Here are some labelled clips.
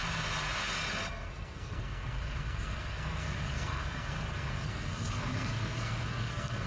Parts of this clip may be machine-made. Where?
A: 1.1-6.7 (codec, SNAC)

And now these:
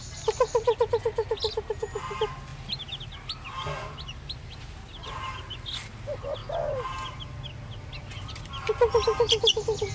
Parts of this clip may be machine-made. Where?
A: none

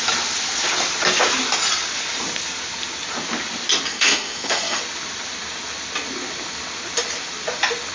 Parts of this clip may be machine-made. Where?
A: 3.9-4.8 (codec, SNAC)